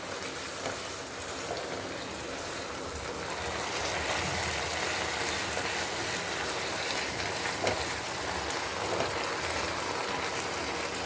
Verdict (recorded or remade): recorded